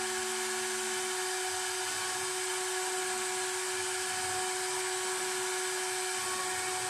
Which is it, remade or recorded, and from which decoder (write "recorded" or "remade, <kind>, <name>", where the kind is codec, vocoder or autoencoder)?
recorded